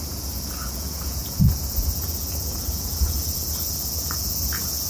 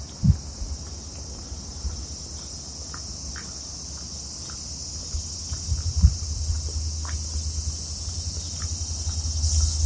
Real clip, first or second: second